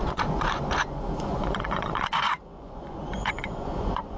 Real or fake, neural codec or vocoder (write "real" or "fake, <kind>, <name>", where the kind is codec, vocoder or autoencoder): fake, vocoder, Vocos